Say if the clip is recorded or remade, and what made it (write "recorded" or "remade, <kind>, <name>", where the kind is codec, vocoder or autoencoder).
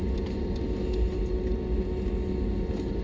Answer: recorded